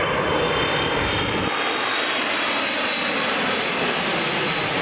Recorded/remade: recorded